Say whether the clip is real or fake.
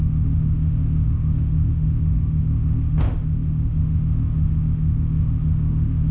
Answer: fake